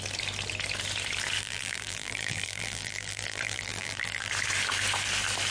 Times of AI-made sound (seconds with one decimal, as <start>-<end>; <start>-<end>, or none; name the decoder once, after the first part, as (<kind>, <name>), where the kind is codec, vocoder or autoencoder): 1.4-4.3 (vocoder, BigVGAN v2)